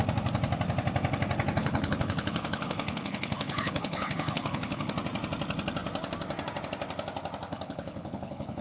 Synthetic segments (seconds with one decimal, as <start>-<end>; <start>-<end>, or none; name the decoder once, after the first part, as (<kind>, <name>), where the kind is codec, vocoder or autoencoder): 1.6-4.9 (codec, HILCodec); 7.5-8.6